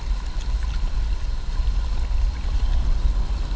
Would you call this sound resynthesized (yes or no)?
no